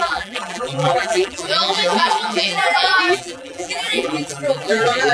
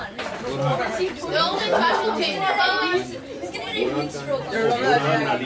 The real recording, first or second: second